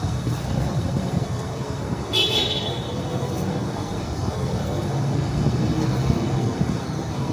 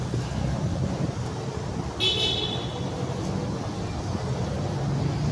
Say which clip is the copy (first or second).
first